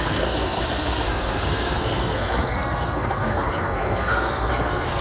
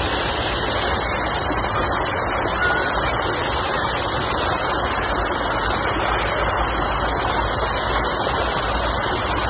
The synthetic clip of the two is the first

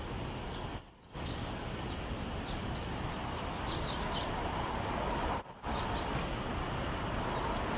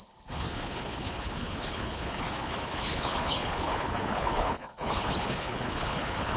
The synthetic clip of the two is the second